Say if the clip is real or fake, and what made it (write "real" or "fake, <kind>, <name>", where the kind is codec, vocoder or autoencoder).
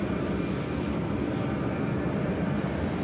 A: real